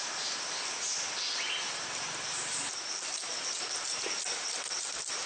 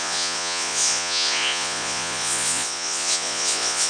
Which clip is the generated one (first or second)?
second